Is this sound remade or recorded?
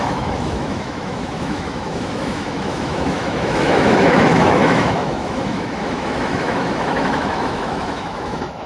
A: remade